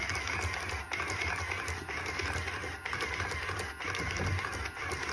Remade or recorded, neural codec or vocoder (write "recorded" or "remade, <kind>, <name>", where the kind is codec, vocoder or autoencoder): recorded